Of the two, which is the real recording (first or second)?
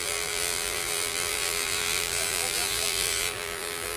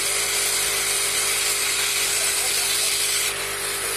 second